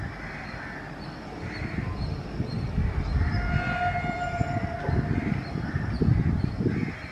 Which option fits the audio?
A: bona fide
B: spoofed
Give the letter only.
A